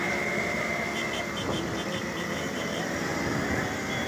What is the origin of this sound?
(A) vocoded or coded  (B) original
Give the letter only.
A